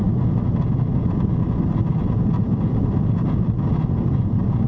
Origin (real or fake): real